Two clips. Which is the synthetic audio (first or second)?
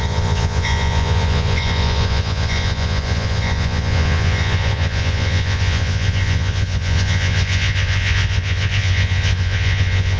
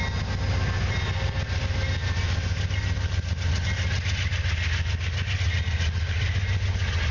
first